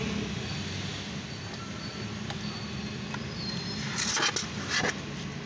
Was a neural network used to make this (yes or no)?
no